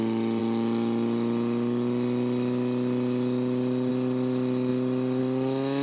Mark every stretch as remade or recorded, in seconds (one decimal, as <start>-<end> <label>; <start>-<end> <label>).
0.0-5.8 recorded